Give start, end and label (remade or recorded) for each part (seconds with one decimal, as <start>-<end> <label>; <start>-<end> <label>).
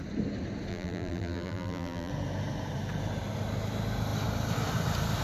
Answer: 0.0-0.7 recorded; 0.7-2.1 remade; 2.1-5.2 recorded